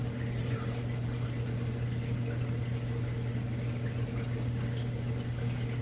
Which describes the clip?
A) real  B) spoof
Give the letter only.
A